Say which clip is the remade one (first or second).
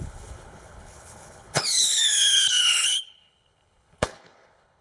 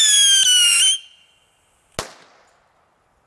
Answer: first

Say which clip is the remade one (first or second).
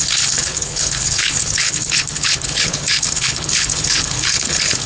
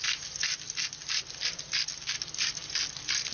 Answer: first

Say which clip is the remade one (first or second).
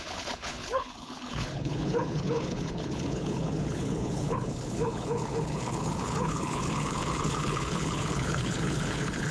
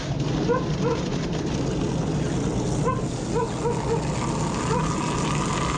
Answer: first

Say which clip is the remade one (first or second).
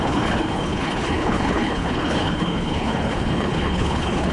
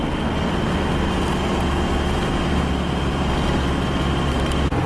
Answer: first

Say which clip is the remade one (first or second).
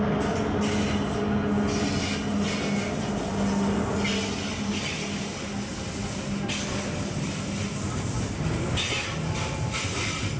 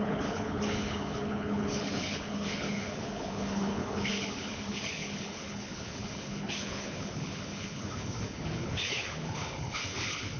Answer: second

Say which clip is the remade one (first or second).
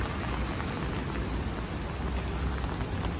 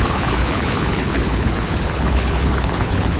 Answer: second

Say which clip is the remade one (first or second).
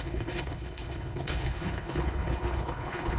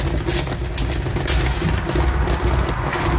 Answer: first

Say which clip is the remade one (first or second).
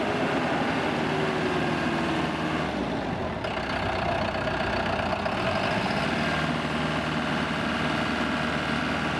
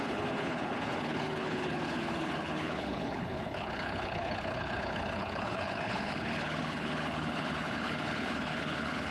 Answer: second